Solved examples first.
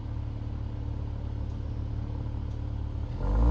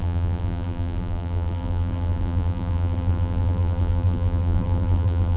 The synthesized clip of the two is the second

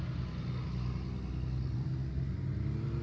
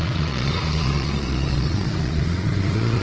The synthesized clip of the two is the second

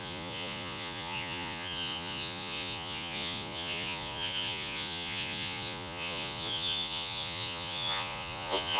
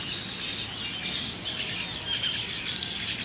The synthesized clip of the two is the first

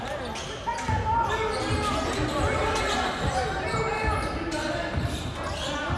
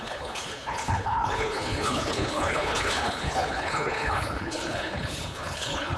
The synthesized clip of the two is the second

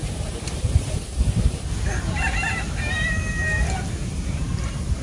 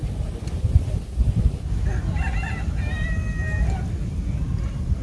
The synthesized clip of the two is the first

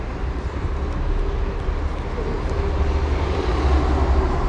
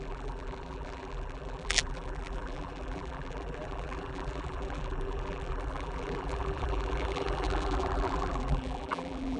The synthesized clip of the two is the second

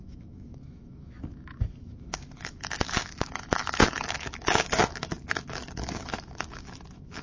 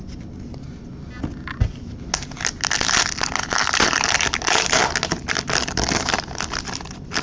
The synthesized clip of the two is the first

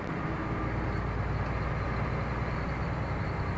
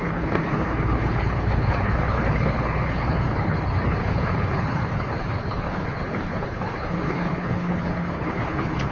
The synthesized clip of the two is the second